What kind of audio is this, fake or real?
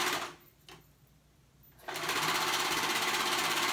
real